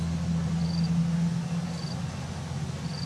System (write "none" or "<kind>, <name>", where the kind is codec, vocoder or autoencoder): none